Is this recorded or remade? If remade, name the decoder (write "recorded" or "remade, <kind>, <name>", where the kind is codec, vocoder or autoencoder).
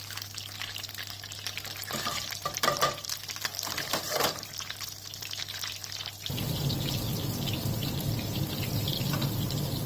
recorded